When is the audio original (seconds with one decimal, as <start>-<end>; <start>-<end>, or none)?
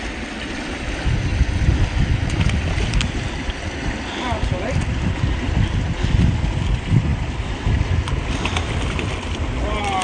0.0-1.3; 2.0-10.0